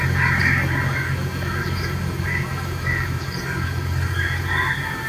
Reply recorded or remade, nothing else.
remade